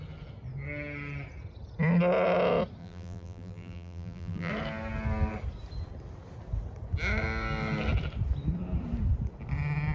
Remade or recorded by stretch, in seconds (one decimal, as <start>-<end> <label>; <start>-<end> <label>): 0.0-2.8 recorded; 2.8-4.5 remade; 4.5-9.9 recorded